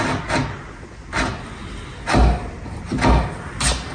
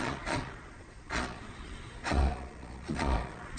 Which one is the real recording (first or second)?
first